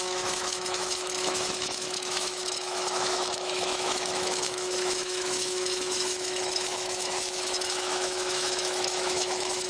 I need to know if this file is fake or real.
fake